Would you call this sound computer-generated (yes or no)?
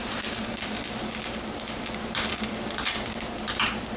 yes